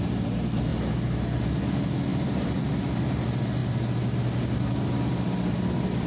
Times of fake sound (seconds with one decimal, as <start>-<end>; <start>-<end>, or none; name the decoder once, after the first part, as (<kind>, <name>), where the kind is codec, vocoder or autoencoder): 2.1-2.7 (vocoder, BigVGAN v2)